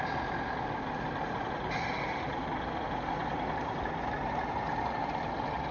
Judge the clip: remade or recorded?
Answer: recorded